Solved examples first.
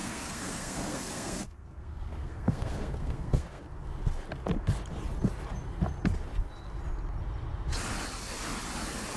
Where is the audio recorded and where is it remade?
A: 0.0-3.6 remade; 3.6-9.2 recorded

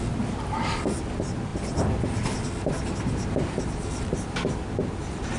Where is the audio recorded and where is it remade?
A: 0.0-5.4 recorded

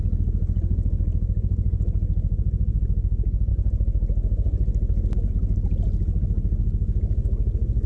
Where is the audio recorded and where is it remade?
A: 0.0-7.9 recorded

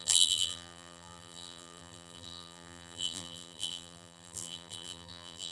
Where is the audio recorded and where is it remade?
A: 0.0-5.5 remade